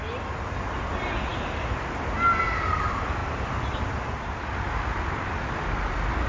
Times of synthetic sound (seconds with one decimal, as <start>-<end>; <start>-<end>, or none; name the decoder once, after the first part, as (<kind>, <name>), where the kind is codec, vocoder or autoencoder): none